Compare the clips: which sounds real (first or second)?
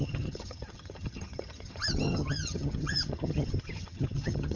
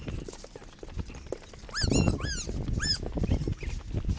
second